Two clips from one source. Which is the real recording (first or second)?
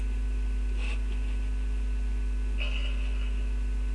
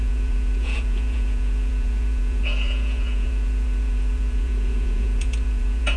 first